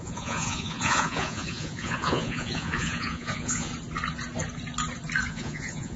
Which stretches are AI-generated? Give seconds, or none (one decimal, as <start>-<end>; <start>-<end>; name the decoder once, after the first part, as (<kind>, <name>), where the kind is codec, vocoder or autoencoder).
0.0-3.7 (vocoder, Vocos); 5.3-6.0